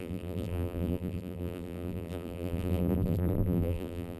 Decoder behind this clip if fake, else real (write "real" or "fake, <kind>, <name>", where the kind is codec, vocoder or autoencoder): fake, vocoder, BigVGAN v2